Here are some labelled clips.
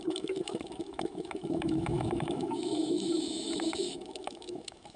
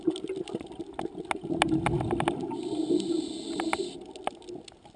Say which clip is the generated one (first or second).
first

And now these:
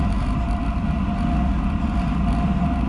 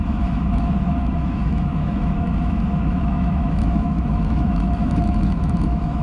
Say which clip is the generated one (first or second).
second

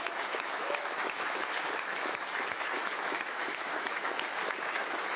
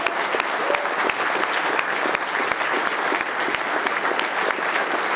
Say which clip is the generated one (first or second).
first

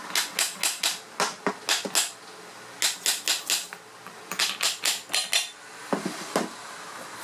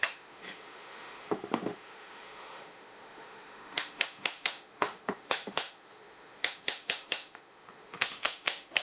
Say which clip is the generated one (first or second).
second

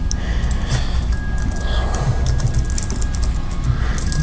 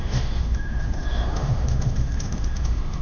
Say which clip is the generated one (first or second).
second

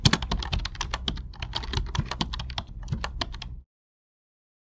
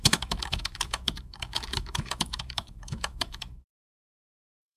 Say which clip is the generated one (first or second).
second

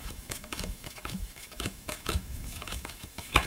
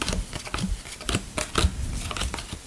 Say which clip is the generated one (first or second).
first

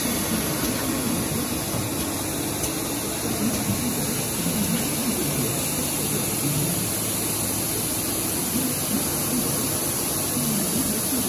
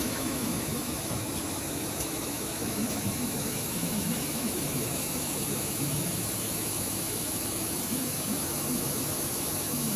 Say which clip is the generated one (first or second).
second